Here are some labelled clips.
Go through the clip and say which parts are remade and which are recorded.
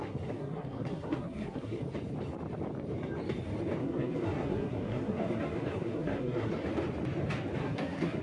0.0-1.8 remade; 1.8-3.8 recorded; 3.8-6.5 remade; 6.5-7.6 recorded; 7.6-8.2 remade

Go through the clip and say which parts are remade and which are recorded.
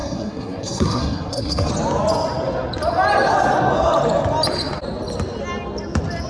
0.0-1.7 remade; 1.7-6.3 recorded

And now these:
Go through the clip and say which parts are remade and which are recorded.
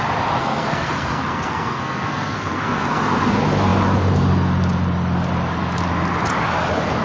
0.0-0.4 recorded; 0.4-3.0 remade; 3.0-7.0 recorded